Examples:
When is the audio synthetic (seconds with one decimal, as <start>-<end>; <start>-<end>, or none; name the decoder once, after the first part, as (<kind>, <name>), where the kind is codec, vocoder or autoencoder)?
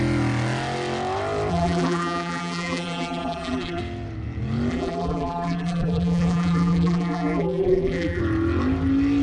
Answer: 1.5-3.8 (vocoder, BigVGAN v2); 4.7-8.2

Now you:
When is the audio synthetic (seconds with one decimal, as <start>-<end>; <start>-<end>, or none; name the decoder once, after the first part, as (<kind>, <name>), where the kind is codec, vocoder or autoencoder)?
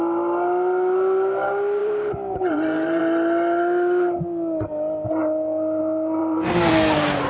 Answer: 1.8-3.0 (vocoder, BigVGAN v2); 6.2-6.7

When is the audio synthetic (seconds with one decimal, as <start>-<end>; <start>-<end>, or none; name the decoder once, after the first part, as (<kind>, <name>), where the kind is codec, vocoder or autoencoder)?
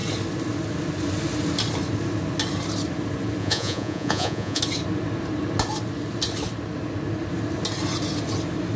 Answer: 3.4-4.6 (vocoder, Vocos)